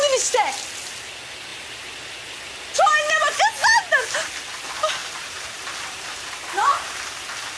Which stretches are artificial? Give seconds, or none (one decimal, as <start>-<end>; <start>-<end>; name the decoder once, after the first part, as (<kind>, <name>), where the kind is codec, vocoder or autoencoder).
3.6-4.2 (vocoder, BigVGAN v2); 5.0-7.0